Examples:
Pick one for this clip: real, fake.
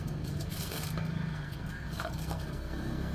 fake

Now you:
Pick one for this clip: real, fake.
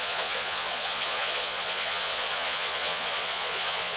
fake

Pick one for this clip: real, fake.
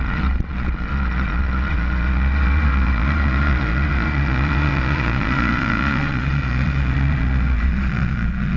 fake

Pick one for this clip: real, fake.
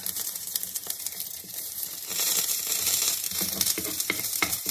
fake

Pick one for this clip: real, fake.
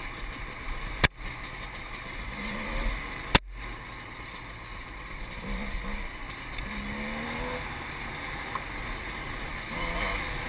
real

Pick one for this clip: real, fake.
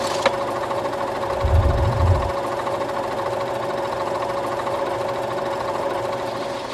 real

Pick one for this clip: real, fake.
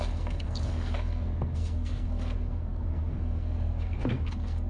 fake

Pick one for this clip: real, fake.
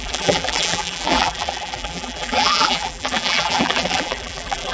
fake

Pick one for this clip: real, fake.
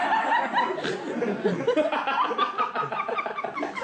real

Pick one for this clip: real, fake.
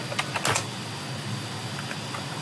real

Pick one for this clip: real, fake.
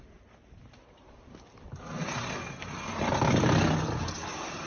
real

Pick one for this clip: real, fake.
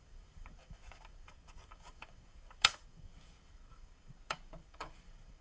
fake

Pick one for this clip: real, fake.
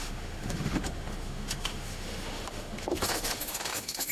fake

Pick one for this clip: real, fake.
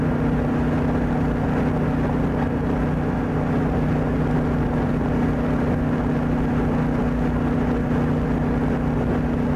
real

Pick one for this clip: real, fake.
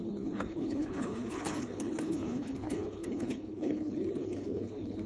fake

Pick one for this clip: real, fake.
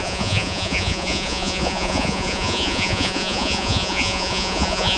fake